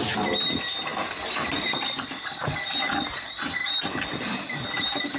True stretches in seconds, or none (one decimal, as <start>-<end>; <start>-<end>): 0.9-3.2; 3.6-5.2